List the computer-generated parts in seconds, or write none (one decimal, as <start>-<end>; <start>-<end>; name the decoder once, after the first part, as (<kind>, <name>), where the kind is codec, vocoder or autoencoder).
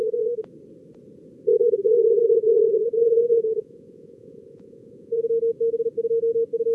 2.0-5.2 (vocoder, Vocos)